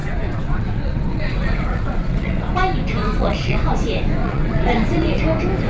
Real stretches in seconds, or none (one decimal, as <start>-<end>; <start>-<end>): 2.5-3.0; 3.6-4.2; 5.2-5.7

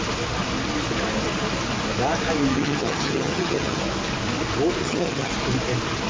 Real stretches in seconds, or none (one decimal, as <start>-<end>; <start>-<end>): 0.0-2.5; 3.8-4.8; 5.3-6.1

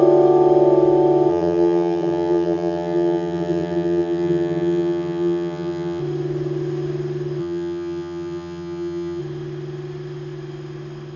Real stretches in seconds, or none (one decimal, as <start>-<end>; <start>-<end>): 0.0-1.3; 6.0-7.4; 9.2-11.2